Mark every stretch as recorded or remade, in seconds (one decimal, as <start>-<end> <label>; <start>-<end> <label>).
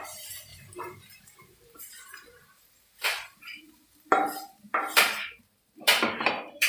0.0-6.7 remade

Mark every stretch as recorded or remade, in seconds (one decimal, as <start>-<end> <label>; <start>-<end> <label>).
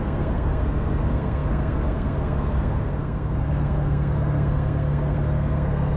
0.0-6.0 remade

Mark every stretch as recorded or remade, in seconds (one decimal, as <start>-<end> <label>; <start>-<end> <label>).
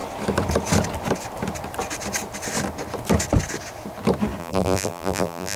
0.0-4.4 recorded; 4.4-5.6 remade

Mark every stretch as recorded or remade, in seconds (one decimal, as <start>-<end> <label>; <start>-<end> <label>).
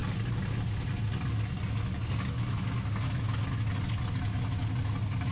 0.0-5.3 recorded